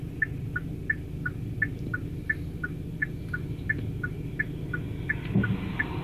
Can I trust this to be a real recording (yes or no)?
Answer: yes